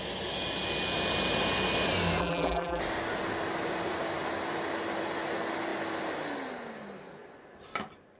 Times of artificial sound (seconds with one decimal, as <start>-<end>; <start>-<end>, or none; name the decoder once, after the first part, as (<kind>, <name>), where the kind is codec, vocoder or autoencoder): 2.2-2.8 (vocoder, BigVGAN v2)